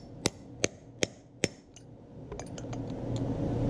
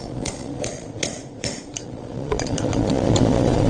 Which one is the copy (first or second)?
second